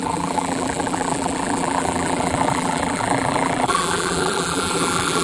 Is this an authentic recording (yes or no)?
no